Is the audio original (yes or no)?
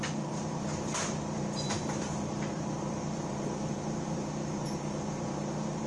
no